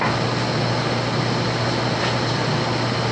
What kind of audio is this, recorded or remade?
recorded